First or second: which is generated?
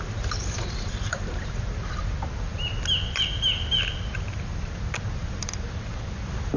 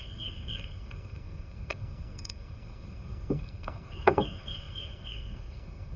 second